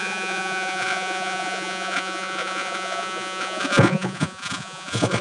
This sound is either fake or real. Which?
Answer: fake